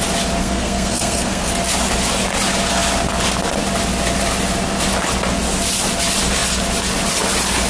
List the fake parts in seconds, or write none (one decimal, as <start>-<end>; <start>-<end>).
0.4-1.5